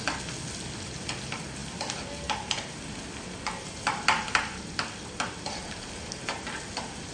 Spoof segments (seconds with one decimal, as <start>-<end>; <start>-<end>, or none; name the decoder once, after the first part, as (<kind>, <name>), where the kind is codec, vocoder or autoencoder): none